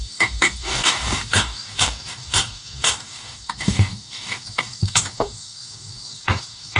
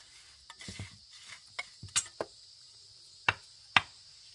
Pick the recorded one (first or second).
second